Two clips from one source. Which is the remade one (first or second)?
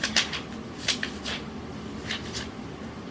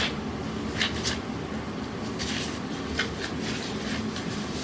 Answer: first